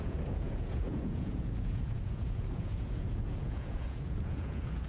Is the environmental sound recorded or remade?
remade